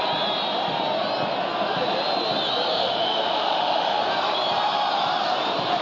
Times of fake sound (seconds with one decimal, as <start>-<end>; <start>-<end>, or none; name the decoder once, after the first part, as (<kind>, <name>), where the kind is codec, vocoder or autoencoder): 2.7-4.0 (autoencoder, DAC-VAE)

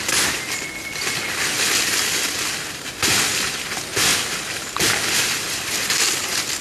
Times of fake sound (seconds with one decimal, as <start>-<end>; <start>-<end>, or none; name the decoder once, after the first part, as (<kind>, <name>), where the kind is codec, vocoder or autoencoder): none

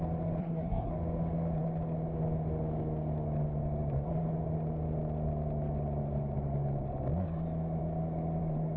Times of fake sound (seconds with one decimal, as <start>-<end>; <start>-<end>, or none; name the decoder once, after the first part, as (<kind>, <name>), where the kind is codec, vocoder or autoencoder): 0.4-0.9 (codec, SNAC)

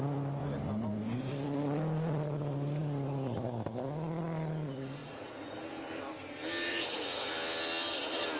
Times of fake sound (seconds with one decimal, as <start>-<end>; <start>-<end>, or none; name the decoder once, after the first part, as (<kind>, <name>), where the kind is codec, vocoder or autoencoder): 5.0-5.6 (vocoder, Vocos); 6.7-7.3